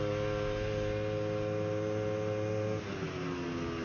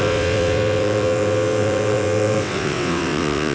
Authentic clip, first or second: first